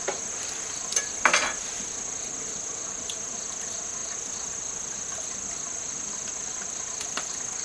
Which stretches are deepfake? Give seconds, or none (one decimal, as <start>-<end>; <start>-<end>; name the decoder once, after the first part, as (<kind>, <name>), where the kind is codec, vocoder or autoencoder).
none